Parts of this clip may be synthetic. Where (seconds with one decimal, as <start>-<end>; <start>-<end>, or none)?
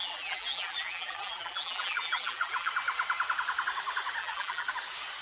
0.0-2.7; 4.2-4.7